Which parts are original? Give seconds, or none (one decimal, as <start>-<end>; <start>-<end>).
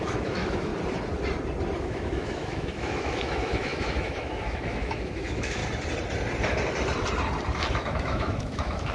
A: 0.7-1.8; 5.6-7.7